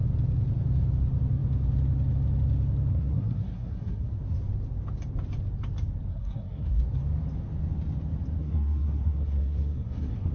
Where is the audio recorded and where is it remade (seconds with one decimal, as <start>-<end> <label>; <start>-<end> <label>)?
0.0-2.9 recorded; 2.9-4.1 remade; 4.1-6.1 recorded; 6.1-6.8 remade; 6.8-8.4 recorded; 8.4-10.3 remade